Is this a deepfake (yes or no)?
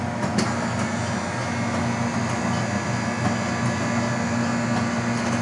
no